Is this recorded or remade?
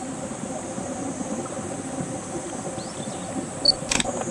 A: recorded